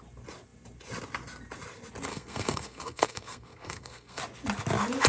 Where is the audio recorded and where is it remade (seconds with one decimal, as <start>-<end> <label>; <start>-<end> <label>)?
0.0-2.1 recorded; 2.1-4.2 remade; 4.2-5.1 recorded

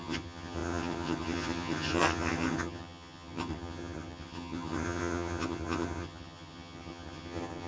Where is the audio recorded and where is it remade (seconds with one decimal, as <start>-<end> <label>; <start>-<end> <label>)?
0.0-7.7 remade

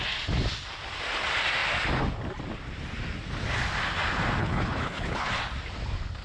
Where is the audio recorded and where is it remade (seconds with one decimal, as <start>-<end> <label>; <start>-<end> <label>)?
0.0-4.4 recorded; 4.4-5.3 remade; 5.3-6.2 recorded

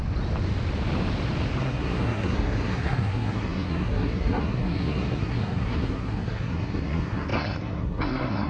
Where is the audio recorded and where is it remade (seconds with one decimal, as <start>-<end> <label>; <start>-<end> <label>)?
0.0-1.6 recorded; 1.6-8.5 remade

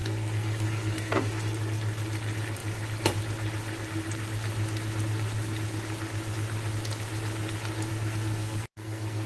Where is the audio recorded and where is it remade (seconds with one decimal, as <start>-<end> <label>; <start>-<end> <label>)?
0.0-1.3 remade; 1.3-7.9 recorded; 7.9-9.3 remade

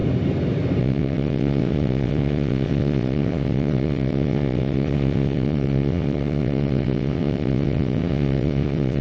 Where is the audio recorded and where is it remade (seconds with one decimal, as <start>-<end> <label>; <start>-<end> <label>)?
0.0-0.8 recorded; 0.8-9.0 remade

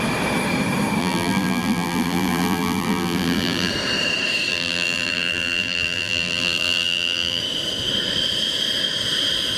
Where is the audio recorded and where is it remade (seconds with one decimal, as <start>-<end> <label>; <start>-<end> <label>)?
0.0-1.0 recorded; 1.0-3.7 remade; 3.7-4.5 recorded; 4.5-7.4 remade; 7.4-9.6 recorded